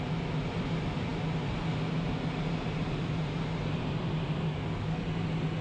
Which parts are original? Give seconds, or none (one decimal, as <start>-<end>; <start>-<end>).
0.0-5.6